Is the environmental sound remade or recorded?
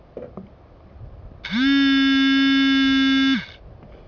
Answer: recorded